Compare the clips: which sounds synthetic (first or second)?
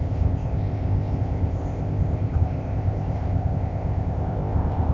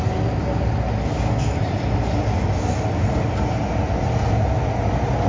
first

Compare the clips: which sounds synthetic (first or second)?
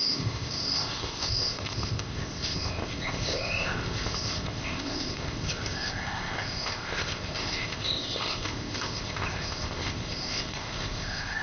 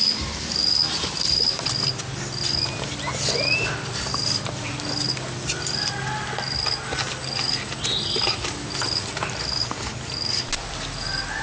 first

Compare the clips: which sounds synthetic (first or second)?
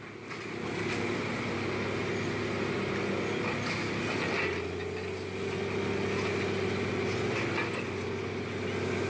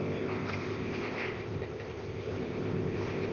second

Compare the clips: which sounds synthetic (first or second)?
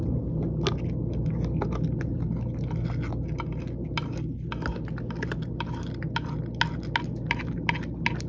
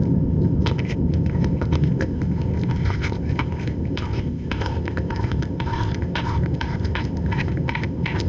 second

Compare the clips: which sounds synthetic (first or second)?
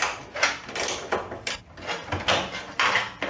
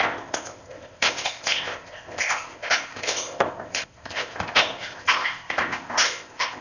second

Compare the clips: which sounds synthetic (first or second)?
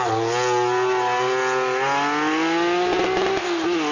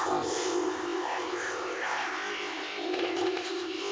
second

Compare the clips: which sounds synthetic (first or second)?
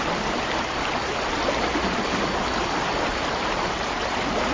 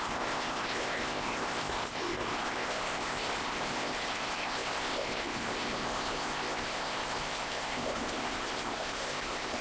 second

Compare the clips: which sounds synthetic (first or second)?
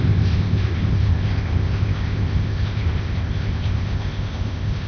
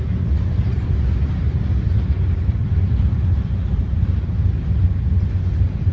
first